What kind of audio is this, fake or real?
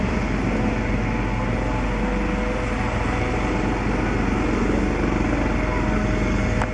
real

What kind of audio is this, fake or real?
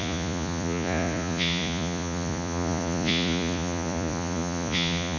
fake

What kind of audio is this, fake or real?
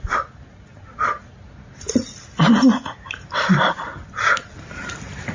real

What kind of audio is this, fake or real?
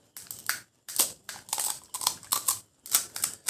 real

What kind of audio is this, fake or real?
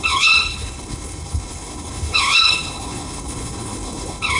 fake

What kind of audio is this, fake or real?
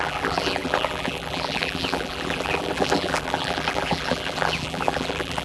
fake